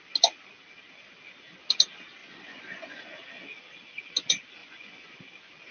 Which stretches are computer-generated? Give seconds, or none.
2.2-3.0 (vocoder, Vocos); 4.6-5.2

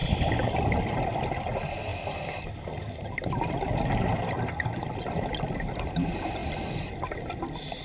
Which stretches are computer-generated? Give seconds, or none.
none

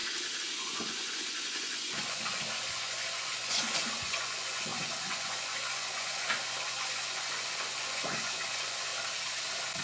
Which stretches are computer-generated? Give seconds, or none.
0.5-8.9 (vocoder, Vocos)

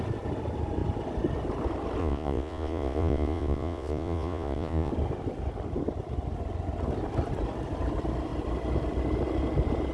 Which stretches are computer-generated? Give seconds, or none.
2.0-4.9 (vocoder, Vocos)